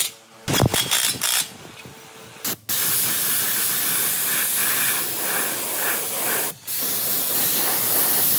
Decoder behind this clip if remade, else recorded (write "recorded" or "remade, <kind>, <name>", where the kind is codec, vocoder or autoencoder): recorded